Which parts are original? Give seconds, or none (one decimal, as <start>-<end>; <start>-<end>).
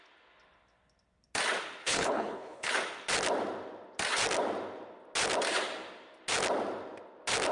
0.0-1.8; 2.7-7.5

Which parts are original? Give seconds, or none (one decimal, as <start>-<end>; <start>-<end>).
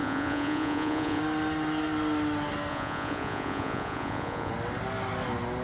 1.2-2.7; 4.5-5.6